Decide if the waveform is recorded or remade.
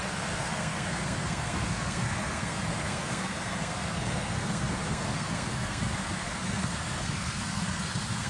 remade